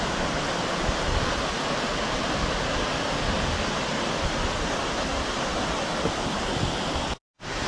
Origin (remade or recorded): recorded